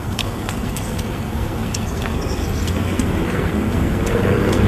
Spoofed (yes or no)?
yes